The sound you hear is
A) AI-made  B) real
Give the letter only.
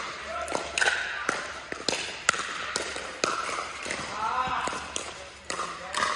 B